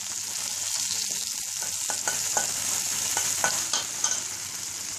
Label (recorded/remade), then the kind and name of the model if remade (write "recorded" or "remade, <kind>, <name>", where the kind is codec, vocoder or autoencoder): recorded